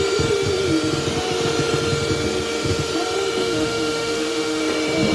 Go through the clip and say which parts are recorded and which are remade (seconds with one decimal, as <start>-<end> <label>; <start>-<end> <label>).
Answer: 0.0-3.4 recorded; 3.4-4.6 remade; 4.6-5.1 recorded